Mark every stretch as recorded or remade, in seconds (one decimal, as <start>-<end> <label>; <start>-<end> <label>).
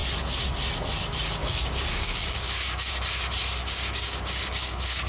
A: 0.0-1.4 recorded; 1.4-2.9 remade; 2.9-3.6 recorded; 3.6-5.1 remade